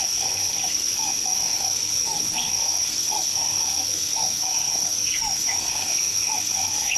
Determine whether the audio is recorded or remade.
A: remade